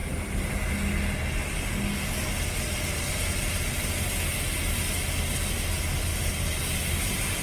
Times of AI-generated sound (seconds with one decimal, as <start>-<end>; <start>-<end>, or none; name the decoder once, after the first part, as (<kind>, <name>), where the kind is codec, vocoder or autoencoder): 0.0-0.5 (vocoder, BigVGAN v2)